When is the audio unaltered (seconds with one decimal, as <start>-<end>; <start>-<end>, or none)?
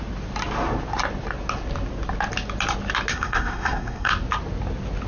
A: 0.0-3.1; 4.1-5.1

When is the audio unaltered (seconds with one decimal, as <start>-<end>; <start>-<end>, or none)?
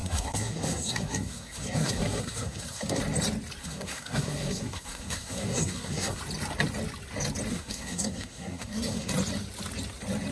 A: 3.0-3.6; 6.2-7.5; 9.1-10.3